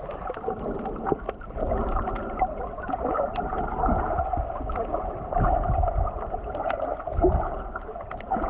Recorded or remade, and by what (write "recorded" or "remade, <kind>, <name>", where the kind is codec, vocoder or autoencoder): recorded